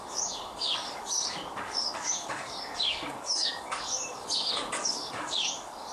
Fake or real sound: fake